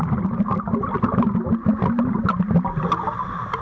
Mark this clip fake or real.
real